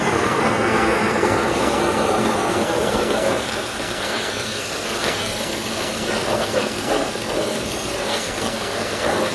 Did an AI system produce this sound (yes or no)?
yes